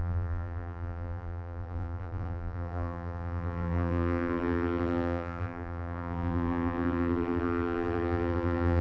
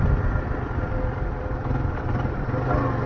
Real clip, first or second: second